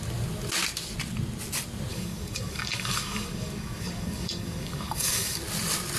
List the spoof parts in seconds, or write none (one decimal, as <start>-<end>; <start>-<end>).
1.9-5.4